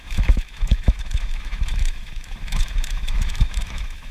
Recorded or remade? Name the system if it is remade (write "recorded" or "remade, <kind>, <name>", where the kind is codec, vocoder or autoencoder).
remade, autoencoder, DAC-VAE